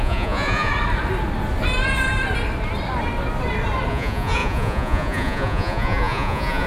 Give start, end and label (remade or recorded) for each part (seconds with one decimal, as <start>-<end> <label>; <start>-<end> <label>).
0.0-0.7 remade; 0.7-3.9 recorded; 3.9-6.7 remade